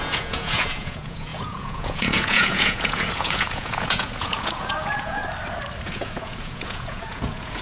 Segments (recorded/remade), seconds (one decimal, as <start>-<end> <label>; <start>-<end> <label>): 0.0-5.2 remade; 5.2-5.8 recorded; 5.8-7.6 remade